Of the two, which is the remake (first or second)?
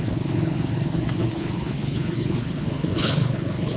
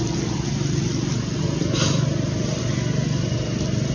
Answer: first